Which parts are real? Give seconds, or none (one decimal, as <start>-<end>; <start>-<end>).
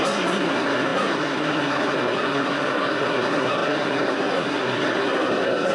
none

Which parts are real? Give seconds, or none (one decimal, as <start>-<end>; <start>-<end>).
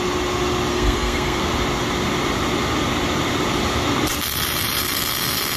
0.0-0.7; 1.4-5.6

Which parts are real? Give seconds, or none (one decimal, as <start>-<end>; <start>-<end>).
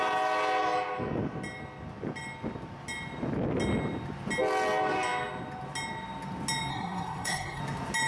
0.0-6.7; 7.6-8.1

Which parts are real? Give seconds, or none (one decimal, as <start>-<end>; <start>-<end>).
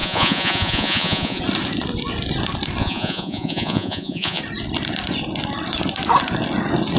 1.4-2.8; 4.4-7.0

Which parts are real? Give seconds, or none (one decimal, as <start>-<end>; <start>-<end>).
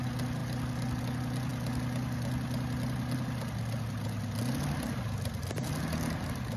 0.0-6.6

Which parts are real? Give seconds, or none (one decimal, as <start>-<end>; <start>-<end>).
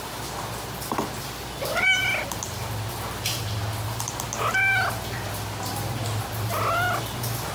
0.0-7.5